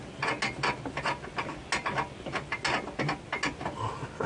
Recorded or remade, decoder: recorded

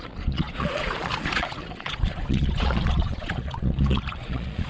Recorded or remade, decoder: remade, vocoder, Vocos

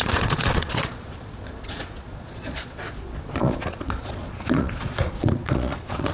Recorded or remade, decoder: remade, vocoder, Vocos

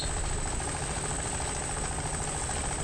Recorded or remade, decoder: recorded